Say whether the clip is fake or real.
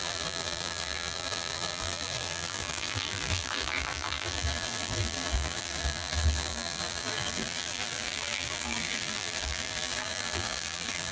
fake